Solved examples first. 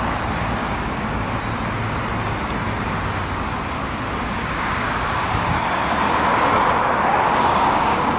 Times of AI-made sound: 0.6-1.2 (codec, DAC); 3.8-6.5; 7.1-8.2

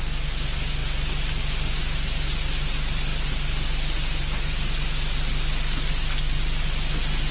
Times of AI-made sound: none

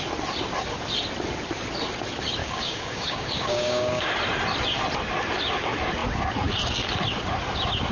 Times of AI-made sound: 2.4-4.1 (codec, DAC)

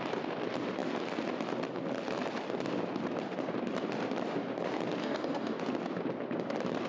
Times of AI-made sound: 5.0-5.6 (codec, DAC)

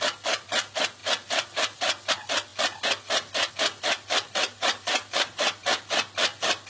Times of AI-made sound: none

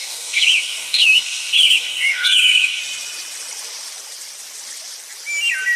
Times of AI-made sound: 0.0-2.8 (codec, DAC)

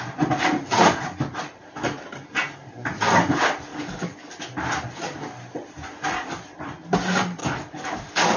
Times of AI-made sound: 3.7-4.3 (codec, DAC); 7.4-8.4

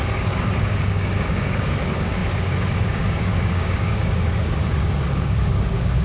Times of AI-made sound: 0.0-6.0 (codec, DAC)